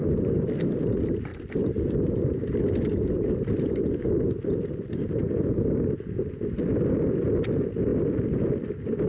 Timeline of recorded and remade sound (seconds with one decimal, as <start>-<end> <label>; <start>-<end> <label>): 0.0-1.3 recorded; 1.3-5.4 remade; 5.4-7.9 recorded; 7.9-8.5 remade; 8.5-9.1 recorded